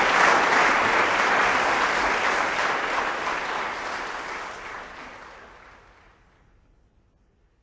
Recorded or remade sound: recorded